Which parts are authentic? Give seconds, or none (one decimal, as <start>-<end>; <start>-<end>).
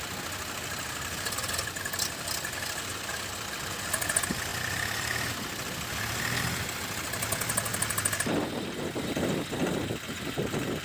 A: 0.0-10.8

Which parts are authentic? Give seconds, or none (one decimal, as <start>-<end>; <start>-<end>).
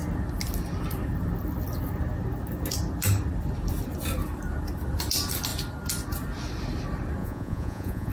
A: 0.0-7.2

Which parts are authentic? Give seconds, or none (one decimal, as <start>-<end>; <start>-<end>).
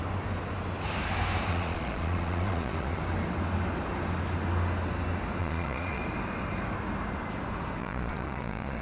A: 0.0-1.5; 3.0-5.4; 6.0-7.8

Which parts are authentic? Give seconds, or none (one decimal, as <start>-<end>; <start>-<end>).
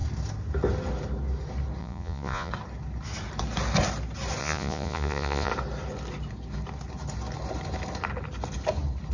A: 0.0-1.8; 2.5-4.4; 5.5-9.1